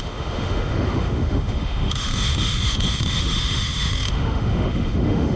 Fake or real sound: fake